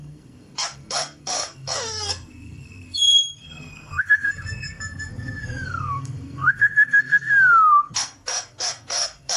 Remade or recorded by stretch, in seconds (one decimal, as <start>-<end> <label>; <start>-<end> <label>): 0.0-9.4 remade